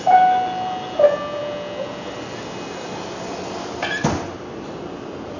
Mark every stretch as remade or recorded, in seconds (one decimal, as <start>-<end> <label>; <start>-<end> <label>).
0.0-5.4 recorded